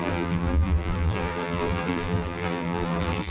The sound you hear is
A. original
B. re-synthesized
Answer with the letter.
B